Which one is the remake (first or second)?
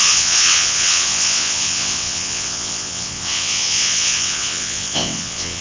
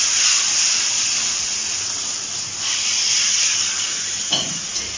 first